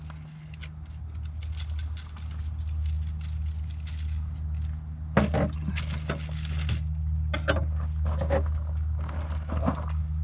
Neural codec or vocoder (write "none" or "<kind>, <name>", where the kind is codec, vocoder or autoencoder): none